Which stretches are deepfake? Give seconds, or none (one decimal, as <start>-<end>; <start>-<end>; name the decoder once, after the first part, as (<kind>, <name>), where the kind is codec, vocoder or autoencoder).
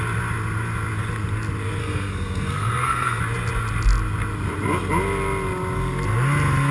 1.8-3.2 (codec, SNAC)